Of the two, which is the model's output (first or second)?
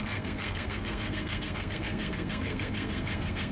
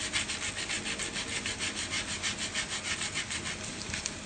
first